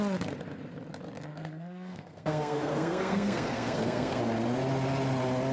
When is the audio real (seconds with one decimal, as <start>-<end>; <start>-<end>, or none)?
0.0-1.3; 4.2-5.5